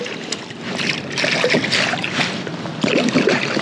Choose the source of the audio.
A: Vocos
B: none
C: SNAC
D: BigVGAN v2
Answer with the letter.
B